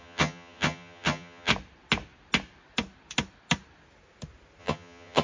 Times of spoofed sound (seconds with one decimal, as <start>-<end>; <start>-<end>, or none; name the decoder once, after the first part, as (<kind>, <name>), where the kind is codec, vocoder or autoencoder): 0.0-1.5 (vocoder, HiFi-GAN); 4.6-5.2